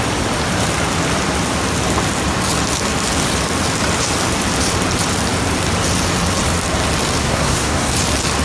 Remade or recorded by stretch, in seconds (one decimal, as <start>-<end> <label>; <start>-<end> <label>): 0.0-7.2 recorded; 7.2-7.9 remade; 7.9-8.4 recorded